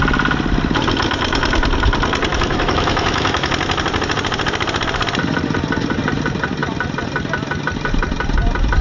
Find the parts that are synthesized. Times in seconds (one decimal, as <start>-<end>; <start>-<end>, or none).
2.3-3.5